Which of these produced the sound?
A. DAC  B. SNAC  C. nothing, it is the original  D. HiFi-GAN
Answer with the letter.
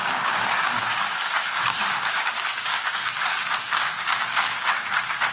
A